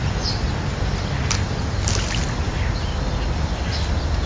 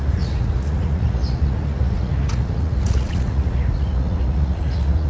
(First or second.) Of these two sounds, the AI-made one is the second